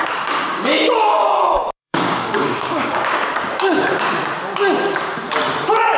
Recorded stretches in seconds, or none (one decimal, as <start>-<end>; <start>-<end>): 0.0-0.5; 4.1-6.0